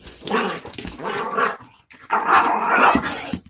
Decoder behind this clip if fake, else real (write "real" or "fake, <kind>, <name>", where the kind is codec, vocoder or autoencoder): fake, vocoder, Vocos